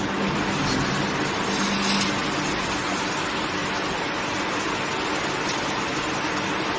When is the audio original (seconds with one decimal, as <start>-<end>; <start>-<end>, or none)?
0.0-6.8